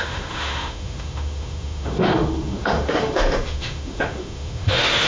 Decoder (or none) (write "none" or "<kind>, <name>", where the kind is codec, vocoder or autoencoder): autoencoder, DAC-VAE